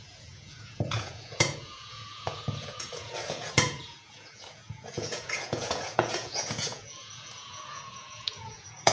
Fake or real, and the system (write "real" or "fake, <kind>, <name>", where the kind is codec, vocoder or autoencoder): fake, vocoder, Vocos